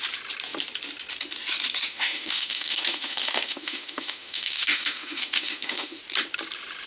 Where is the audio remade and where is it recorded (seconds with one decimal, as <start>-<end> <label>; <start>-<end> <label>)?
0.0-1.9 recorded; 1.9-6.0 remade; 6.0-6.9 recorded